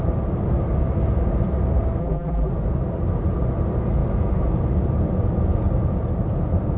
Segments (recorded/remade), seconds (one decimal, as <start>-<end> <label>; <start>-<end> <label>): 0.0-2.0 recorded; 2.0-2.5 remade; 2.5-6.8 recorded